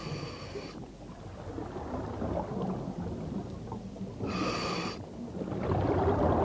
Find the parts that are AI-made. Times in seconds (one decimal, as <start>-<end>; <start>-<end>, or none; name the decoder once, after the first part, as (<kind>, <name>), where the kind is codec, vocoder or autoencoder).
none